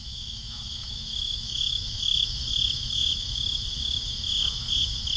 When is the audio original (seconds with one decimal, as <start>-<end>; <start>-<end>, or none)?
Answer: none